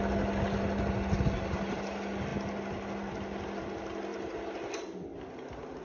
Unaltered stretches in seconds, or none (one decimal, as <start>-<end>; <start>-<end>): 0.0-5.8